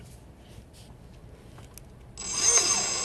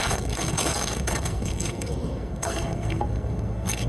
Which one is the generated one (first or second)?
second